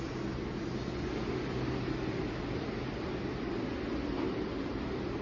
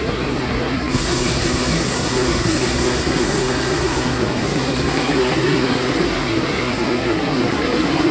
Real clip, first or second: first